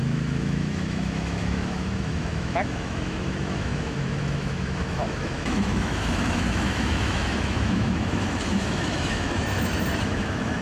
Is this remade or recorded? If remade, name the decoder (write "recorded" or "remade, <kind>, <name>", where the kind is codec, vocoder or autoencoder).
remade, autoencoder, DAC-VAE